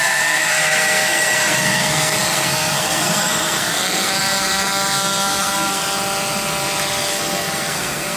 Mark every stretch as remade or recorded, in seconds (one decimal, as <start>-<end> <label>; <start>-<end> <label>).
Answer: 0.0-5.8 remade; 5.8-7.1 recorded; 7.1-8.2 remade